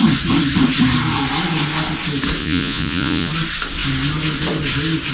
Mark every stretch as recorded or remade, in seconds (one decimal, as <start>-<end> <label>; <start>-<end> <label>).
0.0-2.4 recorded; 2.4-3.3 remade; 3.3-5.1 recorded

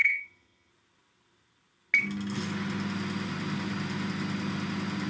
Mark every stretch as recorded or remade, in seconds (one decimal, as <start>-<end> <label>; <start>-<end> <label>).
0.0-0.7 remade; 0.7-5.1 recorded

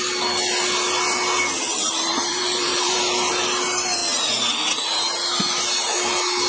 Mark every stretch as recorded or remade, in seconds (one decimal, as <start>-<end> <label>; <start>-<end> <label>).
0.0-1.7 recorded; 1.7-3.3 remade; 3.3-6.5 recorded

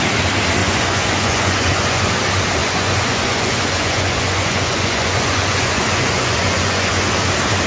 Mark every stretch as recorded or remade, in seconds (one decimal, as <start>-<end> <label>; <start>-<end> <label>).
0.0-0.6 recorded; 0.6-2.1 remade; 2.1-2.6 recorded; 2.6-7.1 remade; 7.1-7.7 recorded

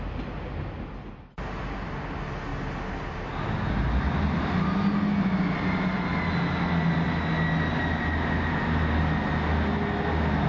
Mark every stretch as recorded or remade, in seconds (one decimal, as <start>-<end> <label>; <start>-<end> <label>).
0.0-10.5 recorded

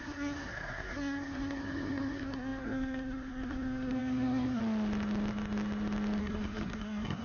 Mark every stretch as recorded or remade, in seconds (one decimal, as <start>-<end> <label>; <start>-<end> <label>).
0.0-4.6 remade; 4.6-6.2 recorded; 6.2-7.2 remade

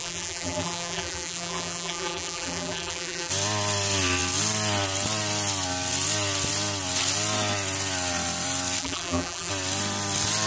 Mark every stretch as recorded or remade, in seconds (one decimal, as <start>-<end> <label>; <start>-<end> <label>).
0.0-3.3 remade; 3.3-8.8 recorded; 8.8-9.5 remade; 9.5-10.5 recorded

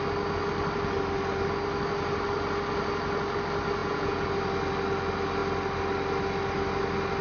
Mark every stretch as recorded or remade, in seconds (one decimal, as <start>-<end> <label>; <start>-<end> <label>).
0.0-3.8 recorded; 3.8-4.3 remade; 4.3-7.2 recorded